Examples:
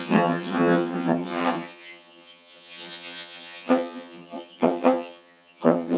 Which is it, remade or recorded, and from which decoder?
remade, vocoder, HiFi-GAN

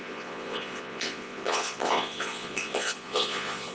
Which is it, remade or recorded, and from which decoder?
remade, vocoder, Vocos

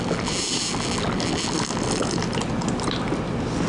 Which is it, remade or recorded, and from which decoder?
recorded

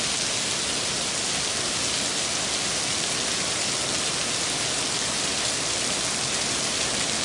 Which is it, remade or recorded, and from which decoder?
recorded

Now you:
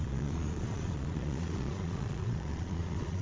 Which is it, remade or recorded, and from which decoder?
remade, vocoder, Vocos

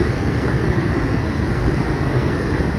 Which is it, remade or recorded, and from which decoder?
remade, codec, SNAC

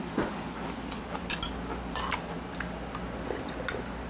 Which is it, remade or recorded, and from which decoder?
recorded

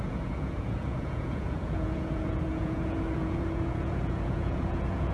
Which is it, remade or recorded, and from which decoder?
remade, vocoder, Vocos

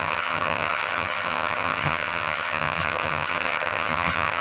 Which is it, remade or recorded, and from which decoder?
remade, vocoder, HiFi-GAN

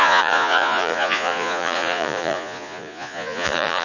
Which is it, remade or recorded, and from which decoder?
remade, vocoder, Vocos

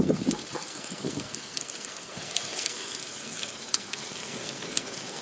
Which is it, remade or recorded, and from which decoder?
remade, codec, SNAC